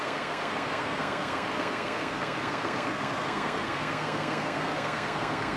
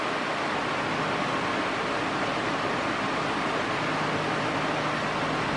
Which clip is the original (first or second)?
second